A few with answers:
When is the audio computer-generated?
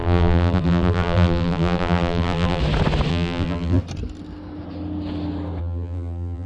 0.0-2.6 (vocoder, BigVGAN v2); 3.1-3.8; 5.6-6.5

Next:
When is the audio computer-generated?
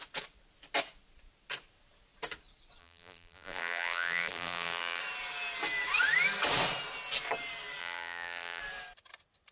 2.8-5.0 (vocoder, BigVGAN v2); 7.8-8.6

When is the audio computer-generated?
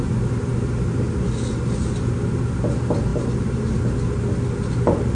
3.1-3.8 (vocoder, BigVGAN v2)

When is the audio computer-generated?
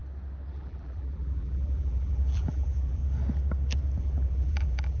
0.5-3.0 (vocoder, BigVGAN v2); 4.0-5.0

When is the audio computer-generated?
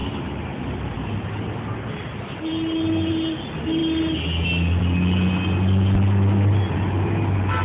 0.0-1.9 (vocoder, BigVGAN v2)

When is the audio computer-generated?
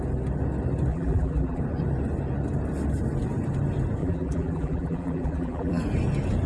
0.9-1.6 (vocoder, BigVGAN v2); 4.0-5.8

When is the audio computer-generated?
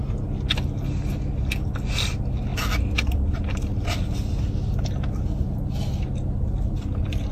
none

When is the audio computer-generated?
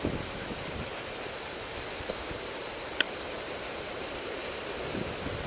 0.0-0.9 (vocoder, BigVGAN v2); 2.1-4.4